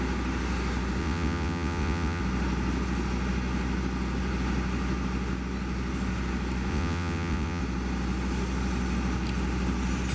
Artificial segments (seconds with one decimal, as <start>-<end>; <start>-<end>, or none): 1.0-2.2; 6.7-7.6

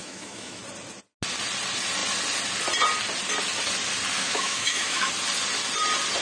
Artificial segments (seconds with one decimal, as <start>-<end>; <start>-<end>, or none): 0.0-0.6; 4.2-5.1

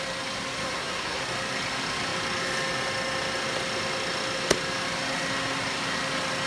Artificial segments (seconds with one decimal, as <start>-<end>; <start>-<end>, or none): 0.6-1.2

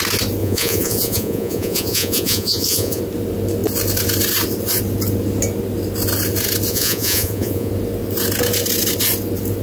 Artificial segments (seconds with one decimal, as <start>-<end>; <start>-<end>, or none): 0.4-3.0; 6.7-7.7

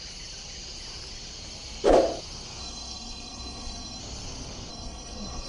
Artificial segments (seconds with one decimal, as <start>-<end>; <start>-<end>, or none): 2.6-4.0; 4.7-5.5

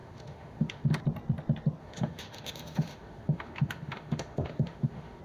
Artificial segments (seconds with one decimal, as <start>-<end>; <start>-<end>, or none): 0.0-1.0; 1.8-5.2